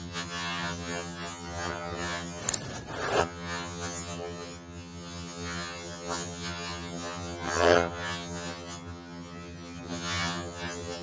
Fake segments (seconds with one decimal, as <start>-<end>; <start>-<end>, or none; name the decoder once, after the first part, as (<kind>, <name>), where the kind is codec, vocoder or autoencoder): 0.0-2.4 (vocoder, HiFi-GAN); 3.2-11.0

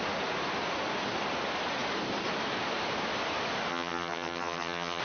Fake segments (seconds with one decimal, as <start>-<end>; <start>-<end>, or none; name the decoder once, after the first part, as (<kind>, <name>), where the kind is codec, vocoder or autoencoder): 3.7-5.0 (vocoder, HiFi-GAN)